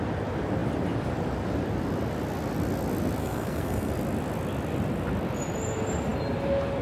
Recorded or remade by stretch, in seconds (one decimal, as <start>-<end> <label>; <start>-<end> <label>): 0.0-3.2 recorded; 3.2-3.9 remade; 3.9-6.8 recorded